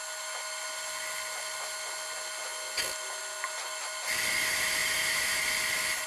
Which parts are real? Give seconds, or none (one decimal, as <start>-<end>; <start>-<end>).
0.0-4.8; 5.4-6.1